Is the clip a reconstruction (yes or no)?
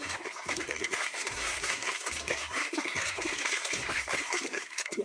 yes